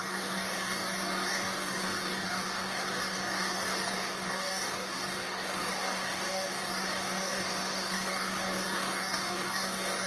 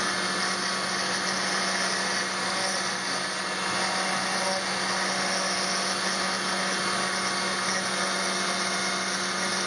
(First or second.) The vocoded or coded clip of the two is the first